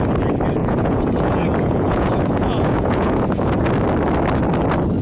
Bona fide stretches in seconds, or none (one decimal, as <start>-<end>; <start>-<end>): 0.0-0.6; 3.6-5.0